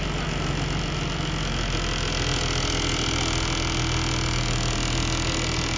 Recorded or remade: recorded